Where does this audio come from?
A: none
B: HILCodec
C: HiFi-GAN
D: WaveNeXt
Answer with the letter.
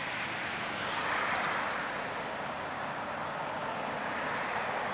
A